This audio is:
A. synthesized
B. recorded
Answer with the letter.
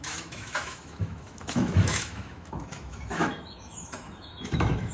A